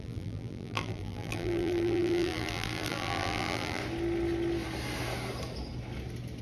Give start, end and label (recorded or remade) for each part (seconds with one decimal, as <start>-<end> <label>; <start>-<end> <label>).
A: 0.0-3.8 remade; 3.8-6.4 recorded